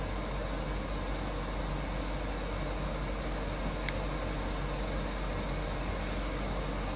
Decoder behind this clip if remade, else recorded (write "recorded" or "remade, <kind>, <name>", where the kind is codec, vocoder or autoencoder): recorded